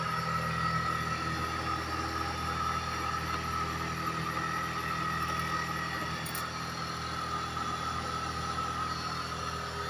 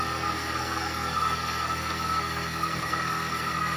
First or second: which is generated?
second